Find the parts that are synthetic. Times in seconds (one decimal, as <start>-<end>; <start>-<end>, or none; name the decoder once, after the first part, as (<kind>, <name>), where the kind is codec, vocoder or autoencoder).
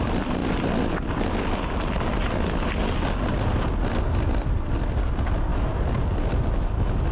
none